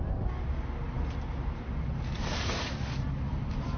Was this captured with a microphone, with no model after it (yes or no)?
yes